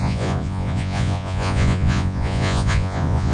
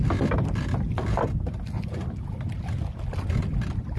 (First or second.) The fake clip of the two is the first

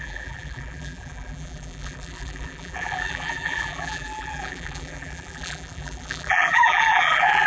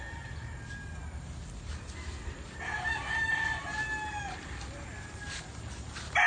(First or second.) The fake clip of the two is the first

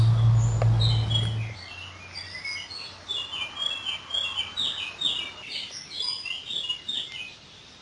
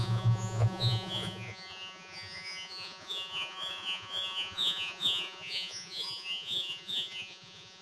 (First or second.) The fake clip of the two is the second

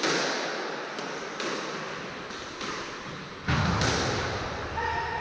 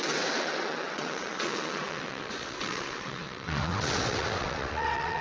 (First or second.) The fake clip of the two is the second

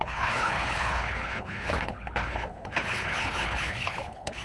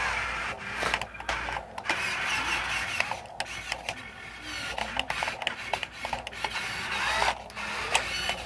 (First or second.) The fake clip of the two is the first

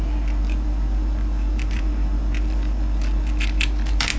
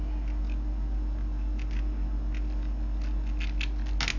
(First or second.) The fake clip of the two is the first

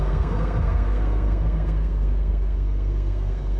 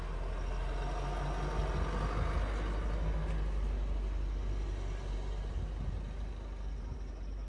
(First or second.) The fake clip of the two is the first